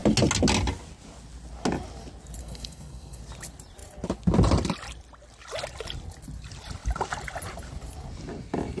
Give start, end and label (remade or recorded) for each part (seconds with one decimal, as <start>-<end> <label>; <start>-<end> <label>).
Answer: 0.0-2.4 recorded; 2.4-3.2 remade; 3.2-8.8 recorded